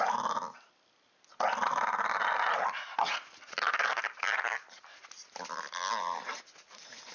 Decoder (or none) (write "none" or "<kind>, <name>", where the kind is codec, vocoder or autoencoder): none